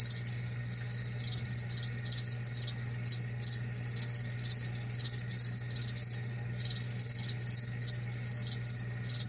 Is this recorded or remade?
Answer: recorded